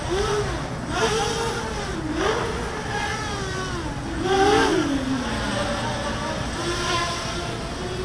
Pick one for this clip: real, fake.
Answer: real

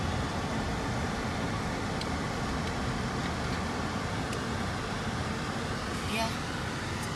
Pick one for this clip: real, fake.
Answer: real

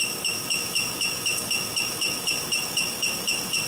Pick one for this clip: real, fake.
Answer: fake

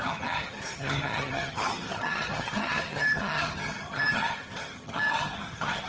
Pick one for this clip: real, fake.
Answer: fake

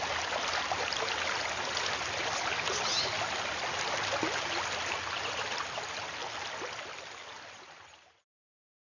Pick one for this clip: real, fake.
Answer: real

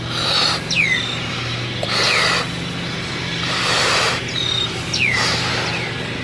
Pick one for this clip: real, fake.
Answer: fake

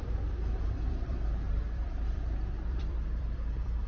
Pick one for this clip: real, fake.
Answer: fake